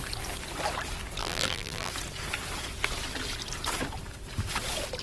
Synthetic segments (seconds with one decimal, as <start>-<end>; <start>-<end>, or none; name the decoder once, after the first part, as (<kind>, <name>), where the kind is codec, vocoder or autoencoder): 1.2-1.9 (vocoder, BigVGAN v2)